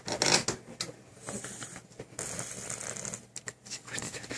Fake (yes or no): no